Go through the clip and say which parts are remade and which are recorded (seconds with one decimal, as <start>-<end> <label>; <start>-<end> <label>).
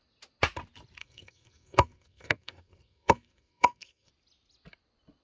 0.0-1.0 recorded; 1.0-4.1 remade; 4.1-5.2 recorded